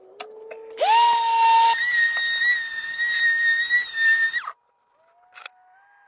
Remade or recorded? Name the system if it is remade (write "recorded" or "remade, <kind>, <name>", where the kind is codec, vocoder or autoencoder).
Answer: recorded